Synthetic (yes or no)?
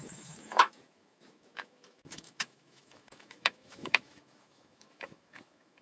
yes